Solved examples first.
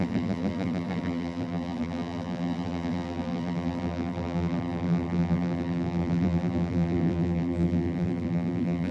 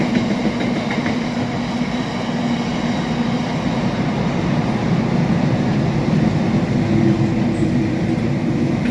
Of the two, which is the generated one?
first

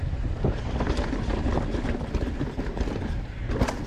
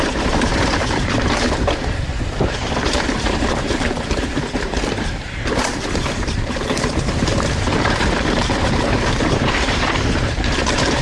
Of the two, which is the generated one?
second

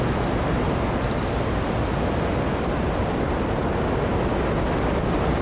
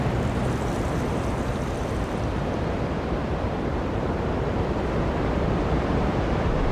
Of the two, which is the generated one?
second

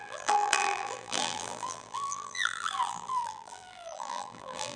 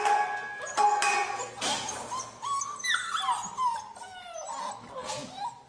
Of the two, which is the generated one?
first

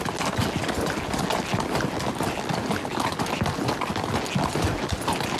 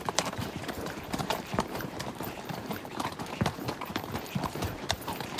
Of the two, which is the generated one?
second